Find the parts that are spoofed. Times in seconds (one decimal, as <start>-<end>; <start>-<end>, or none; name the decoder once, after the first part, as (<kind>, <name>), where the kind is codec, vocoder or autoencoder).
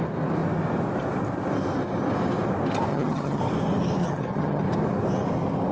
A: 2.9-3.4 (vocoder, HiFi-GAN); 4.0-4.6